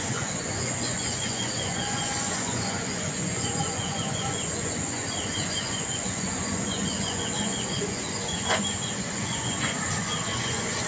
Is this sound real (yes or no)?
no